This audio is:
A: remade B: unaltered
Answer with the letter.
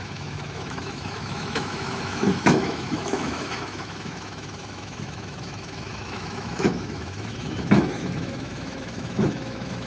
A